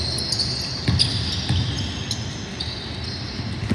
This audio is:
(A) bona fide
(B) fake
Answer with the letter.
A